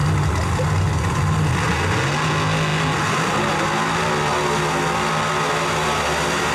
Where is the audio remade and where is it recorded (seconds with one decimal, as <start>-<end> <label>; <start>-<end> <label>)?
0.0-6.5 recorded

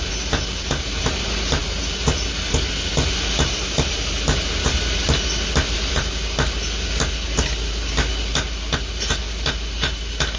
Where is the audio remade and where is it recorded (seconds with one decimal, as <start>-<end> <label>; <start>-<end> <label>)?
0.0-10.4 recorded

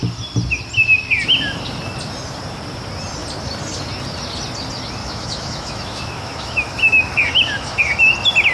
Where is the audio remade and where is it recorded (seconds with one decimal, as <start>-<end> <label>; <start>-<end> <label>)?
0.0-5.0 recorded; 5.0-8.1 remade; 8.1-8.5 recorded

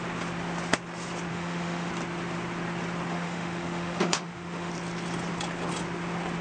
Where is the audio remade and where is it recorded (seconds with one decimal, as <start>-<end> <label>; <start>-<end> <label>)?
0.0-1.3 recorded; 1.3-1.9 remade; 1.9-3.1 recorded; 3.1-4.7 remade; 4.7-6.4 recorded

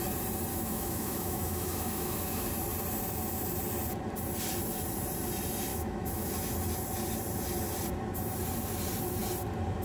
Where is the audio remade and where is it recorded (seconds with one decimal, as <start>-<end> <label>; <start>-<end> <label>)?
0.0-0.5 recorded; 0.5-2.5 remade; 2.5-5.7 recorded; 5.7-6.3 remade; 6.3-9.8 recorded

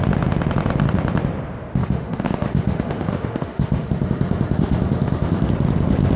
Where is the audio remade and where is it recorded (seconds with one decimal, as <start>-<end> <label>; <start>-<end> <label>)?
0.0-1.8 recorded; 1.8-5.5 remade; 5.5-6.2 recorded

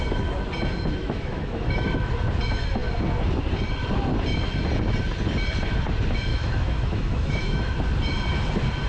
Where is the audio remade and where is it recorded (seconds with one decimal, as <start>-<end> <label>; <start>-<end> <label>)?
0.0-1.0 recorded; 1.0-2.1 remade; 2.1-6.3 recorded; 6.3-7.7 remade; 7.7-8.9 recorded